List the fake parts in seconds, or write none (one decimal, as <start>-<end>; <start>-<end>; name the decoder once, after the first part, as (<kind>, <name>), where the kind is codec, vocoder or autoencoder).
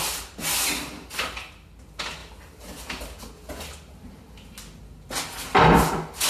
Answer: none